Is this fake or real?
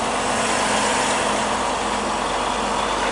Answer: real